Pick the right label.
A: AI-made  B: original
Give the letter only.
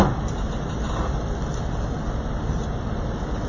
B